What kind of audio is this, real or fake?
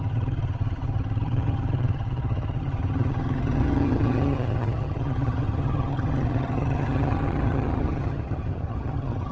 fake